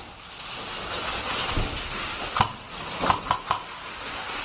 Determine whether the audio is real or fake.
real